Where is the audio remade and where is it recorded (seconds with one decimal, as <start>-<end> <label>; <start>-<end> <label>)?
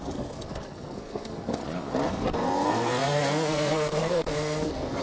0.0-1.6 remade; 1.6-2.1 recorded; 2.1-5.0 remade